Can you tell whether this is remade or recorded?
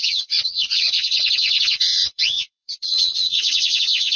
remade